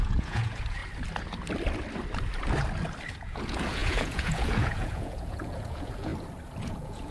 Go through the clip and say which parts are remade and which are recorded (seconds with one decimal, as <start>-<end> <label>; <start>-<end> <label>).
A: 0.0-0.8 remade; 0.8-3.1 recorded; 3.1-6.1 remade; 6.1-6.6 recorded; 6.6-7.1 remade